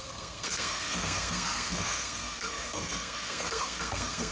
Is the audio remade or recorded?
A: remade